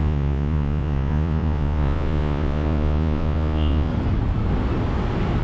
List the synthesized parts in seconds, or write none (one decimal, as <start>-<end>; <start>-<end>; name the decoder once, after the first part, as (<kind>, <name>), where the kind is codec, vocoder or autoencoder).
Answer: 0.0-3.9 (vocoder, Vocos)